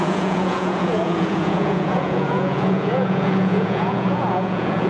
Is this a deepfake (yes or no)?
yes